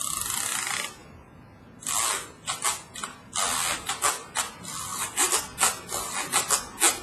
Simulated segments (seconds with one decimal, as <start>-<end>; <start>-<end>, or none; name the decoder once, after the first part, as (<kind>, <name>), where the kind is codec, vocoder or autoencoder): 4.9-6.1 (vocoder, BigVGAN v2)